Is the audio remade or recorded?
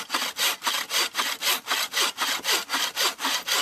recorded